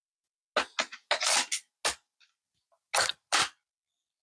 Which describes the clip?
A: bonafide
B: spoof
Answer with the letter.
A